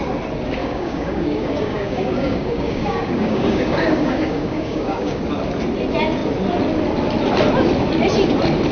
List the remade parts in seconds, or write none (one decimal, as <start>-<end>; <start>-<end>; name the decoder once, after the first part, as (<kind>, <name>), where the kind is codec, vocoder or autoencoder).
0.6-5.2 (codec, DAC)